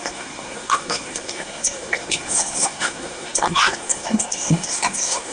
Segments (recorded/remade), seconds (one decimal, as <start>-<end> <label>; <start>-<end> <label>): 0.0-5.3 remade